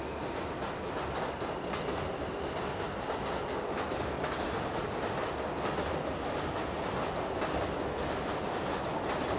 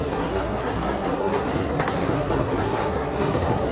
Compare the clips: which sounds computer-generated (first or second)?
second